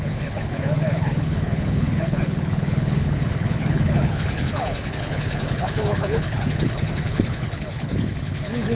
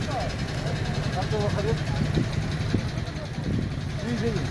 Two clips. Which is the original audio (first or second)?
second